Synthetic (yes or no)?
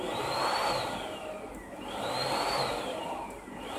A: no